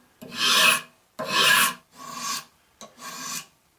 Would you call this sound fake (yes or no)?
no